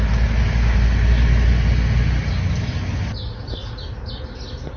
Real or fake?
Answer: real